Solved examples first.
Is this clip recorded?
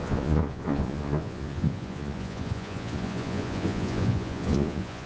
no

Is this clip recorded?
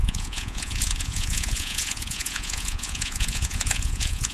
no